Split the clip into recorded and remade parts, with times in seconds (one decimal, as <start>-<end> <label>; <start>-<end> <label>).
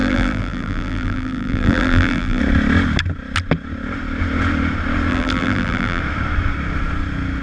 0.0-2.4 remade; 2.4-5.1 recorded; 5.1-6.0 remade; 6.0-7.4 recorded